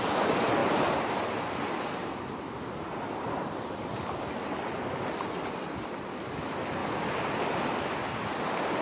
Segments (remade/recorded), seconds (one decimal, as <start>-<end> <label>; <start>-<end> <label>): 0.0-8.8 recorded